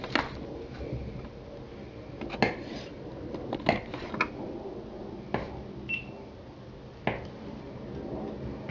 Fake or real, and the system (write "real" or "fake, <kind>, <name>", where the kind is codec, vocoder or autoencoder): real